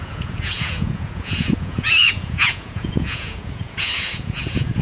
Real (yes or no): no